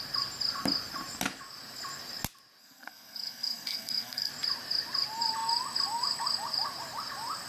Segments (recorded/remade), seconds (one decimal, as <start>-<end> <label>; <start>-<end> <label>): 0.0-2.6 recorded; 2.6-4.3 remade; 4.3-7.5 recorded